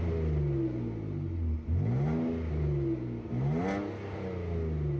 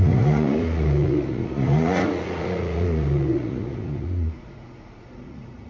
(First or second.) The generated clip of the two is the second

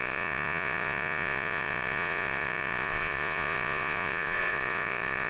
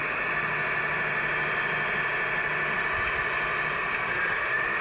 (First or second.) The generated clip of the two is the first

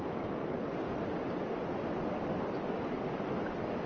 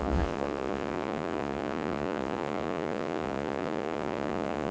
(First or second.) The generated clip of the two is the second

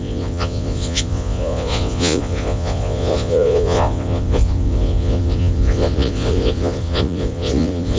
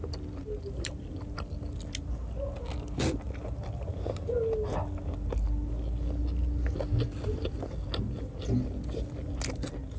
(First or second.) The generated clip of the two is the first